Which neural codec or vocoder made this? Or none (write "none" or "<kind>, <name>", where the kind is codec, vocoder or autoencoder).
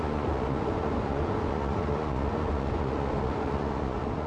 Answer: vocoder, Vocos